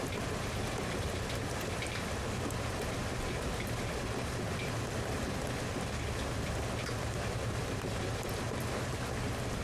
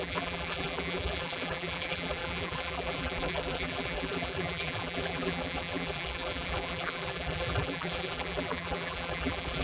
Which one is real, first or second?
first